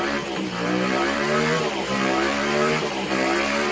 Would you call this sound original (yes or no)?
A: no